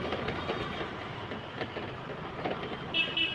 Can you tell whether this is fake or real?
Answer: real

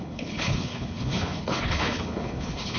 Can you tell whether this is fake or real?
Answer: fake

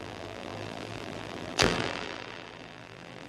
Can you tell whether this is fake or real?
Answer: fake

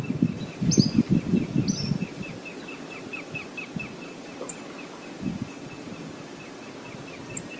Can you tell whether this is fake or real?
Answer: real